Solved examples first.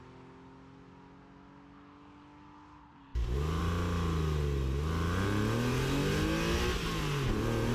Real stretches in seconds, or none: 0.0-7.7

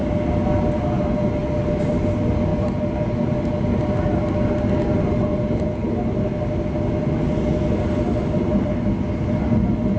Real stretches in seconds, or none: 0.0-10.0

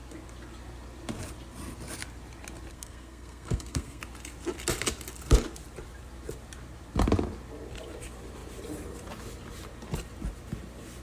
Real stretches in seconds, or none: 0.0-2.7; 4.0-11.0

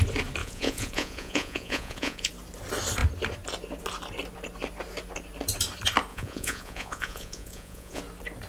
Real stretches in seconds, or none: 0.0-0.4; 2.3-6.1; 8.0-8.5